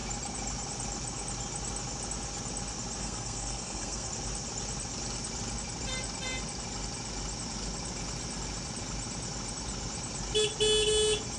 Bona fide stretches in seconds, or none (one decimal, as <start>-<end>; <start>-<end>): 0.0-3.0; 4.1-11.4